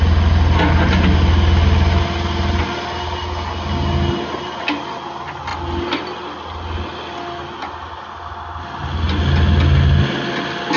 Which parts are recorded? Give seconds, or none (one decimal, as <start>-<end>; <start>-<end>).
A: 0.0-10.8